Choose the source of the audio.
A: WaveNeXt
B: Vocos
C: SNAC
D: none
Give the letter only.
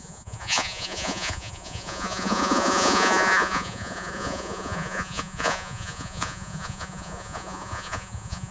B